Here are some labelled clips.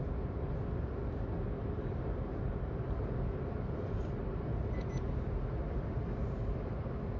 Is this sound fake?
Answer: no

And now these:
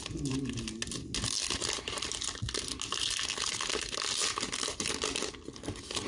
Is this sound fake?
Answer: no